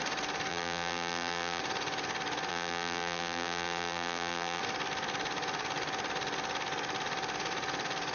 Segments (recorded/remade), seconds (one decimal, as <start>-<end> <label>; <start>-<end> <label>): 0.0-0.5 recorded; 0.5-1.6 remade; 1.6-2.5 recorded; 2.5-4.6 remade; 4.6-8.1 recorded